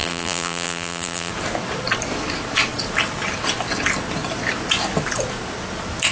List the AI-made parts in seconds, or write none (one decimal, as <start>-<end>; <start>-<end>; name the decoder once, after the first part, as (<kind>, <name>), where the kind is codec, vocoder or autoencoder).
0.0-1.3 (vocoder, BigVGAN v2)